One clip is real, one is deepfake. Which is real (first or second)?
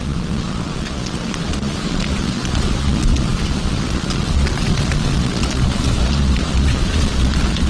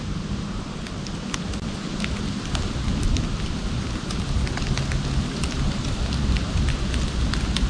second